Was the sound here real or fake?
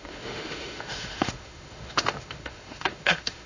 fake